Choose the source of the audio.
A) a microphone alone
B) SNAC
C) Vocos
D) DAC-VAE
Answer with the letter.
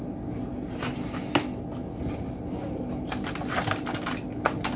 A